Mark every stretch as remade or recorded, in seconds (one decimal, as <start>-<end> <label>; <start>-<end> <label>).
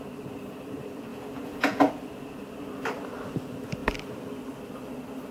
0.0-1.1 recorded; 1.1-1.9 remade; 1.9-5.3 recorded